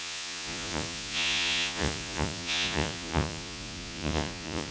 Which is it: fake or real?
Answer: fake